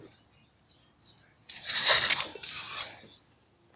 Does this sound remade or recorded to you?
recorded